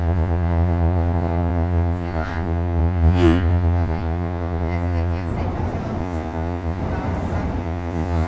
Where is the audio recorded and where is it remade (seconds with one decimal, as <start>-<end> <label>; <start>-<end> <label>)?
0.0-5.3 remade; 5.3-6.0 recorded; 6.0-6.8 remade; 6.8-7.6 recorded; 7.6-8.3 remade